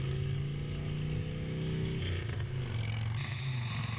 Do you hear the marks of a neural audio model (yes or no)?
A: no